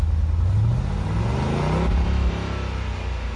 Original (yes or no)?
yes